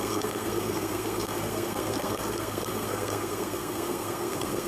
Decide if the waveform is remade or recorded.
remade